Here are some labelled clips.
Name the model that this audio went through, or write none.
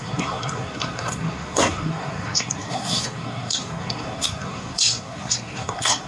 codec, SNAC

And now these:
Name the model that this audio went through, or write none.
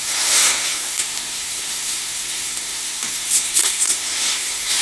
codec, SNAC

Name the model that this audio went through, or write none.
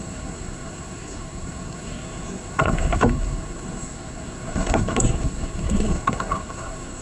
codec, SNAC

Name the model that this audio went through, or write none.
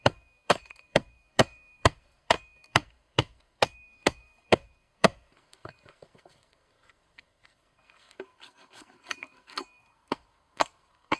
codec, SNAC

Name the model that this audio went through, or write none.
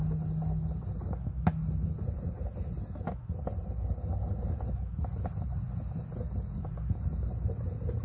none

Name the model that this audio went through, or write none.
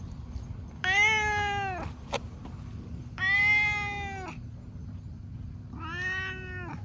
none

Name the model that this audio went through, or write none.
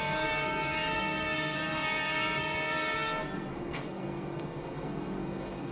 codec, SNAC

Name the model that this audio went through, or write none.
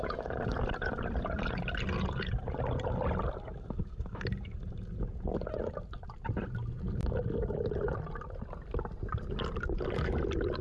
none